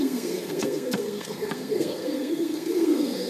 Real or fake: fake